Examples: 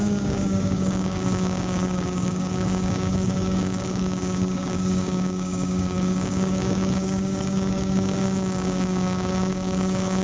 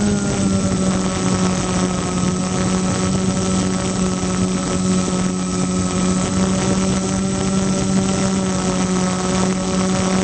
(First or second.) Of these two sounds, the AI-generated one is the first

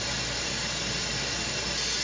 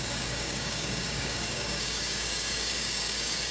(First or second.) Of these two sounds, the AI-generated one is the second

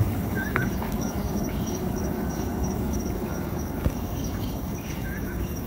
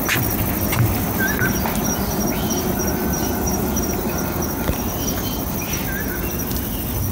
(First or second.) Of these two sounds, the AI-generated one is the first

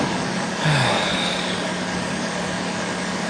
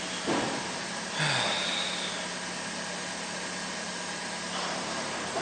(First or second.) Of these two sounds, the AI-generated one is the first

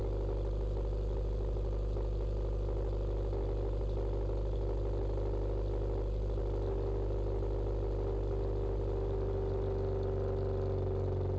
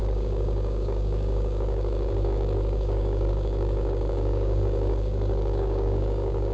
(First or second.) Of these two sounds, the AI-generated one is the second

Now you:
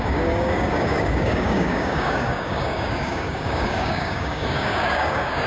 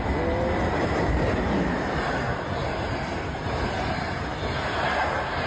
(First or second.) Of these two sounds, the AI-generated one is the first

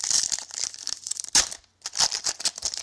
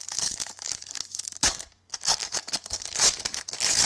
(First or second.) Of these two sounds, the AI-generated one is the second